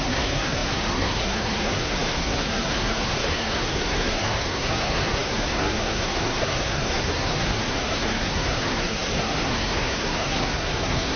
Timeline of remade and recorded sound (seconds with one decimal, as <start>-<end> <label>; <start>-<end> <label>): 0.0-11.2 remade